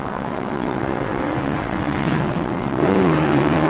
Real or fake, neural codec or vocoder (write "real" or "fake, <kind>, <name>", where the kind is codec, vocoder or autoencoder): fake, vocoder, WaveNeXt